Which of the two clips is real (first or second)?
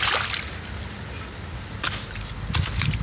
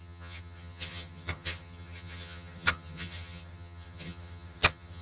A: first